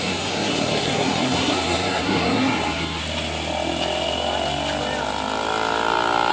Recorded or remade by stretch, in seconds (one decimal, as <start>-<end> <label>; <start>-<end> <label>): 0.0-3.0 remade; 3.0-6.3 recorded